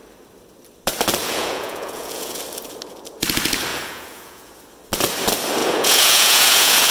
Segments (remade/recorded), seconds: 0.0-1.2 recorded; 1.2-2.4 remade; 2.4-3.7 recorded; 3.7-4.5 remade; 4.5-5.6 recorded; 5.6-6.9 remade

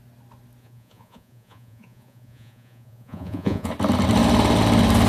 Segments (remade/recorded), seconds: 0.0-0.6 recorded; 0.6-3.7 remade; 3.7-5.1 recorded

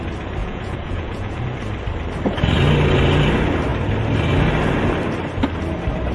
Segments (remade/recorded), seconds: 0.0-0.4 recorded; 0.4-1.4 remade; 1.4-6.1 recorded

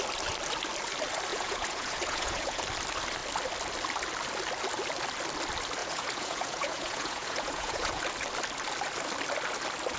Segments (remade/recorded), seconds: 0.0-1.3 recorded; 1.3-2.6 remade; 2.6-5.8 recorded; 5.8-8.0 remade; 8.0-10.0 recorded

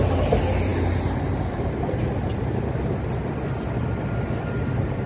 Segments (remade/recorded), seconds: 0.0-5.1 recorded